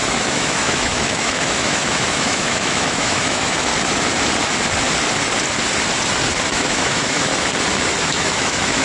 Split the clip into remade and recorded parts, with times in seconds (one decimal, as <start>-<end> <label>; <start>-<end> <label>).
0.0-3.7 remade; 3.7-6.5 recorded; 6.5-7.3 remade; 7.3-8.0 recorded; 8.0-8.8 remade